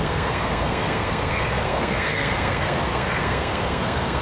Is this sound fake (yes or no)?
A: yes